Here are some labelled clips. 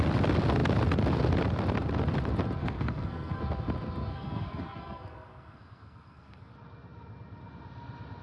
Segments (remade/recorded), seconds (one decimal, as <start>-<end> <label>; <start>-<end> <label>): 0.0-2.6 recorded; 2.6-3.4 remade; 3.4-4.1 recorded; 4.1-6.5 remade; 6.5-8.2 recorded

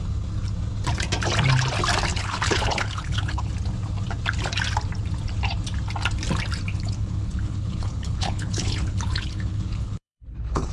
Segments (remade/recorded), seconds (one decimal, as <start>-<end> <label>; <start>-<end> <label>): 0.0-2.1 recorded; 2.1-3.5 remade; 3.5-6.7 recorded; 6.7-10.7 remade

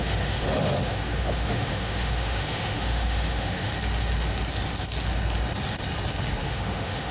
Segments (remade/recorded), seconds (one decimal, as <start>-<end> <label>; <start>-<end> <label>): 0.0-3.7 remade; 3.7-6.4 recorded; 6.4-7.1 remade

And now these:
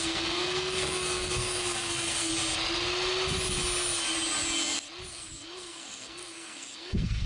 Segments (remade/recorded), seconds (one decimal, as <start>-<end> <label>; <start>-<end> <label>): 0.0-2.3 remade; 2.3-5.1 recorded; 5.1-7.3 remade

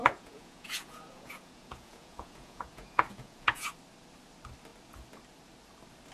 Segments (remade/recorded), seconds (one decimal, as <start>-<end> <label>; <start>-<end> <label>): 0.0-3.7 remade; 3.7-6.1 recorded